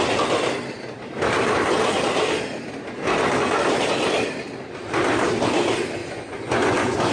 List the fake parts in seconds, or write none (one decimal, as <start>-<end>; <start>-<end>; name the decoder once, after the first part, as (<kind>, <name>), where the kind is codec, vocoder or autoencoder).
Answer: 6.0-7.1 (vocoder, Vocos)